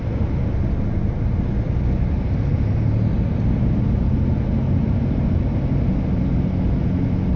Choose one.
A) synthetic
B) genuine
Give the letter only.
B